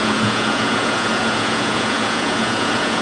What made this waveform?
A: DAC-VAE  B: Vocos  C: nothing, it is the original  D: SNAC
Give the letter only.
B